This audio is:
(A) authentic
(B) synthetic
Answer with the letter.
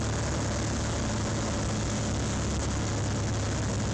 A